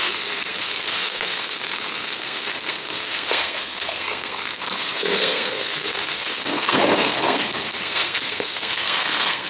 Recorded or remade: remade